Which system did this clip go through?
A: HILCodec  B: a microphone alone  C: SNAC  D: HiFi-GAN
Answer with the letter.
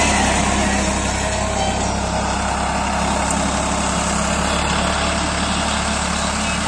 B